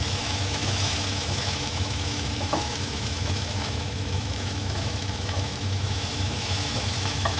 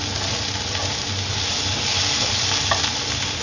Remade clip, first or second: first